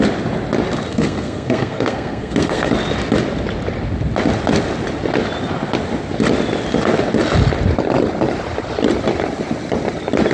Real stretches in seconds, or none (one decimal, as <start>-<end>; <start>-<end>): 0.0-0.9; 2.7-10.3